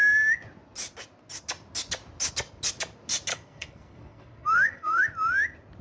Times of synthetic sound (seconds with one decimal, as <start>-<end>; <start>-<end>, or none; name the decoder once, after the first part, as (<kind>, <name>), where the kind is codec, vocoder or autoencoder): 3.3-5.1 (codec, SNAC)